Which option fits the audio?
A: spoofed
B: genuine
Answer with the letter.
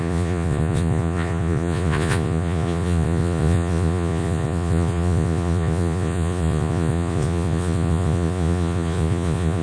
A